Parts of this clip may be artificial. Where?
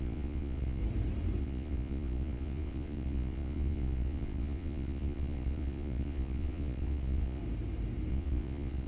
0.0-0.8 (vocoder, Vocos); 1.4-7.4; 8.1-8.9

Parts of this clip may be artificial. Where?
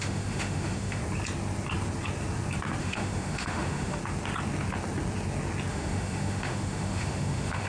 0.0-1.0 (autoencoder, DAC-VAE); 2.8-4.0; 5.7-7.7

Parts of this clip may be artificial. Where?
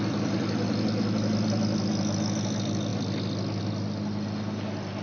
none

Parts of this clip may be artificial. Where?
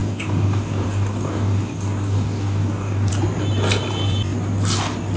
0.0-3.1 (codec, DAC)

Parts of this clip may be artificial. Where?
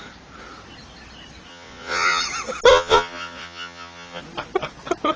1.5-2.2 (vocoder, Vocos); 2.7-4.2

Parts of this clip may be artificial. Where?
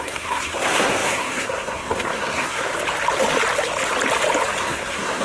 0.0-2.7 (codec, SNAC); 4.6-5.2